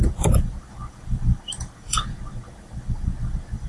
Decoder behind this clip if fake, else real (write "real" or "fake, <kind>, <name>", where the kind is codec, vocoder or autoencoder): fake, vocoder, BigVGAN v2